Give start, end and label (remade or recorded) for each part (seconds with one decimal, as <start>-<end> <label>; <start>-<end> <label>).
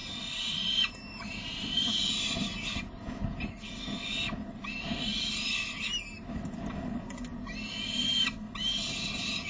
0.0-9.5 recorded